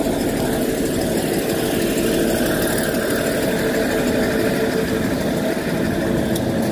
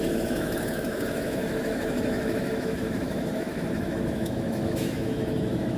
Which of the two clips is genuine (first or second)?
first